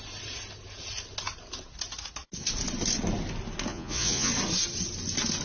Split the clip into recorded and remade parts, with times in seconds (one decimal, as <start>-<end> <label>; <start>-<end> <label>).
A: 0.0-3.7 recorded; 3.7-4.3 remade; 4.3-5.4 recorded